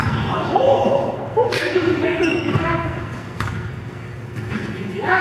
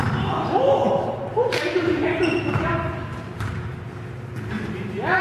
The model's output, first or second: first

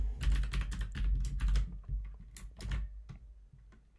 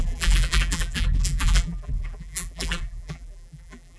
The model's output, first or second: second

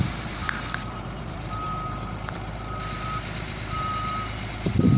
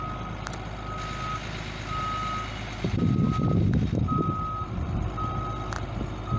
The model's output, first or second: first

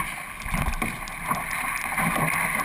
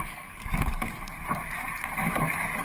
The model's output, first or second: second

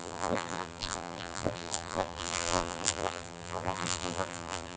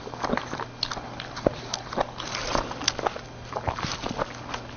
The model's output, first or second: first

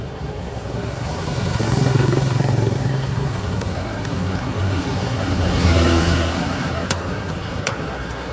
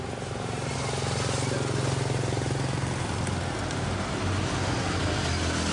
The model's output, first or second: first